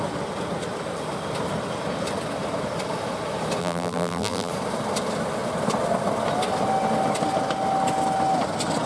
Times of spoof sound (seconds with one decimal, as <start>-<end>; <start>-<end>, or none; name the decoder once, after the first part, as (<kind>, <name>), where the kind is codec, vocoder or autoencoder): 3.6-4.5 (vocoder, BigVGAN v2)

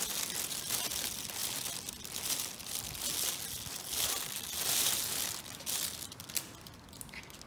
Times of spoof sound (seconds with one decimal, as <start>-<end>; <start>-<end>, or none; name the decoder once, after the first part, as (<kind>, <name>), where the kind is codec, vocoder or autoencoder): none

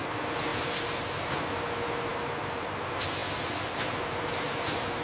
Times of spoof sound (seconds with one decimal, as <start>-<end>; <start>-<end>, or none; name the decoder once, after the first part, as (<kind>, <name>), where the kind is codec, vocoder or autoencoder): none